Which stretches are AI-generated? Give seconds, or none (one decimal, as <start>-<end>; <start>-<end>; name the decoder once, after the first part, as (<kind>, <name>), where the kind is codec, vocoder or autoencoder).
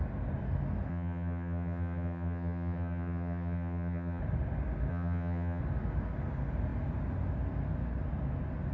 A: 0.9-4.2 (vocoder, HiFi-GAN); 4.9-5.6